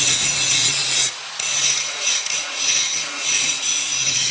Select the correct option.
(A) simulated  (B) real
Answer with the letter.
A